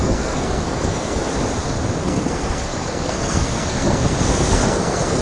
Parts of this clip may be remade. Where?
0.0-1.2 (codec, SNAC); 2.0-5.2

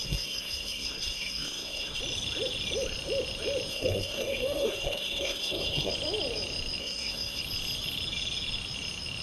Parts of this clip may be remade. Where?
0.0-2.0 (codec, SNAC); 3.7-5.9; 6.8-7.4

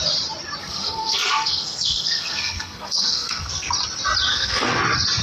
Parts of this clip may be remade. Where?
0.6-3.7 (codec, SNAC); 4.3-4.8